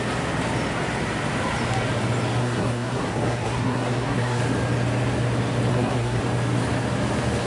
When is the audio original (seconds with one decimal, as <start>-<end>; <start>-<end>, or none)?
0.0-2.4; 4.4-5.7; 6.2-7.5